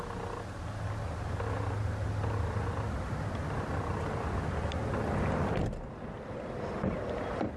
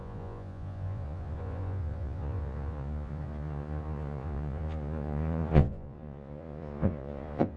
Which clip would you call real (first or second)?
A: first